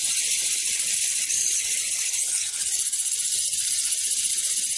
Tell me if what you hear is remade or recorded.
recorded